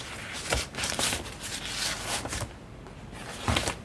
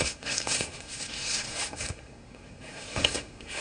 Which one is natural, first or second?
first